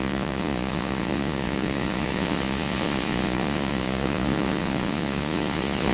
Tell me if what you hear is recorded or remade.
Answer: remade